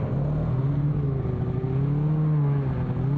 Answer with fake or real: real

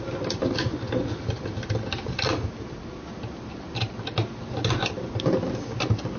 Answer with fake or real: real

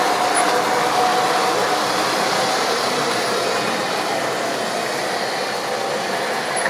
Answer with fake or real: real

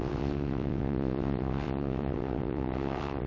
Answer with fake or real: fake